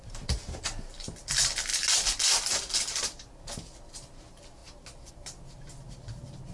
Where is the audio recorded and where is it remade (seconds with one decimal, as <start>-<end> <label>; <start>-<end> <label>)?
0.0-6.5 recorded

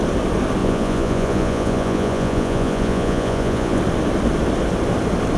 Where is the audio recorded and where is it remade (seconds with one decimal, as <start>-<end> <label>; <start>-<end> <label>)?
0.0-0.6 recorded; 0.6-3.8 remade; 3.8-5.4 recorded

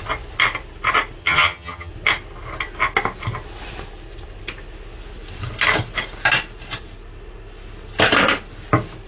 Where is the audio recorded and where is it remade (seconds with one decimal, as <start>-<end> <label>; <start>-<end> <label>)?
0.0-1.2 recorded; 1.2-1.9 remade; 1.9-9.1 recorded

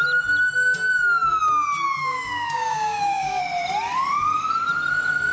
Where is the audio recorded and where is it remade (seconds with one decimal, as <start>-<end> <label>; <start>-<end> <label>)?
0.0-2.0 recorded; 2.0-3.4 remade; 3.4-5.3 recorded

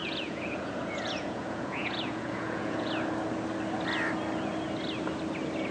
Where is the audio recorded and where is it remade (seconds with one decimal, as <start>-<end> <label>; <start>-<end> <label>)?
0.0-2.9 remade; 2.9-5.7 recorded